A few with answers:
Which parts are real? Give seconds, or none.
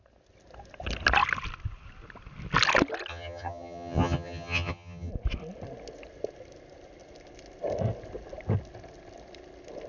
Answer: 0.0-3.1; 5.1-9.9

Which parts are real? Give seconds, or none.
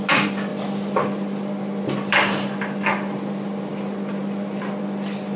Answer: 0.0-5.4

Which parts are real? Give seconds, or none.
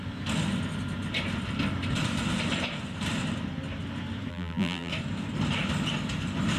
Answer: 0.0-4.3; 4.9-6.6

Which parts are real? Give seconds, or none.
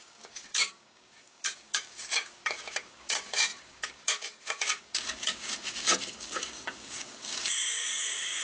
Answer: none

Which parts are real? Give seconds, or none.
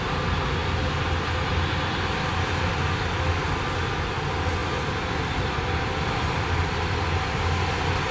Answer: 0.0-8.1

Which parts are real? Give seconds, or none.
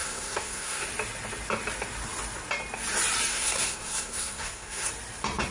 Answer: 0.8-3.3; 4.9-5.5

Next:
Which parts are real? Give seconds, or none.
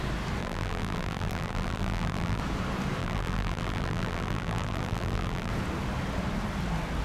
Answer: 0.0-0.4; 2.4-3.0; 5.5-7.0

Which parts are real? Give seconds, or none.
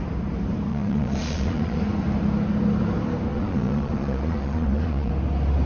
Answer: 0.0-0.7; 1.8-3.3; 5.1-5.7